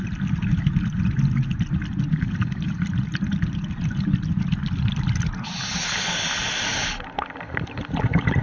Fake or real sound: real